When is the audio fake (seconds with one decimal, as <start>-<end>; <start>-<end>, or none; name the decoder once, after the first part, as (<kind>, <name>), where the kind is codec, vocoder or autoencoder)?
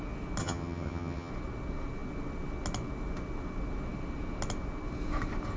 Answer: 0.4-1.3 (vocoder, HiFi-GAN)